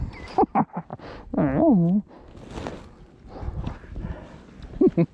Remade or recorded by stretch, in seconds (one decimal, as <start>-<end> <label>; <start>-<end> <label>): 0.0-5.1 recorded